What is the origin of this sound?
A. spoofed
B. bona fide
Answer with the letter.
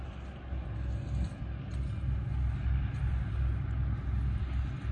B